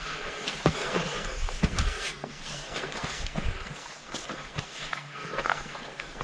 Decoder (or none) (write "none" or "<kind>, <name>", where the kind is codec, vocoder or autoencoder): codec, SNAC